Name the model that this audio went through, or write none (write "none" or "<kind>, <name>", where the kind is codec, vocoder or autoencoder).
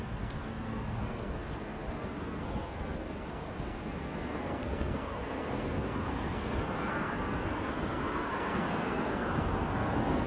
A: codec, SNAC